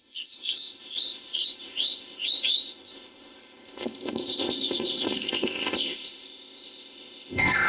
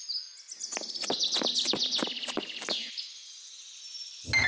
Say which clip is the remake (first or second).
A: first